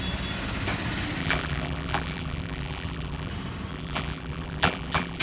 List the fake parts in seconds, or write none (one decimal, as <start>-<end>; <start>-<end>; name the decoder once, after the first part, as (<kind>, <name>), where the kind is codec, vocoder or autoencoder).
1.2-3.3 (vocoder, BigVGAN v2); 3.7-5.2